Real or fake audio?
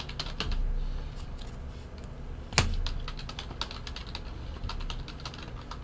real